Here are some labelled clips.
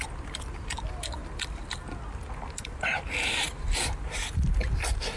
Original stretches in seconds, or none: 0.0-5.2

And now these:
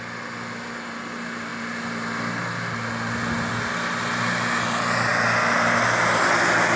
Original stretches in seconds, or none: 0.0-6.8

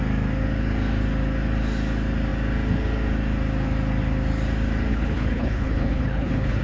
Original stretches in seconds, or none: 0.0-4.9

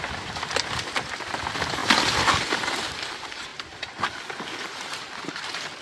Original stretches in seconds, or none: 0.0-5.8

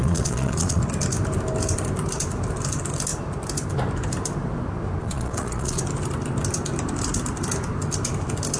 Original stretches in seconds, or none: 0.8-5.0; 5.8-8.6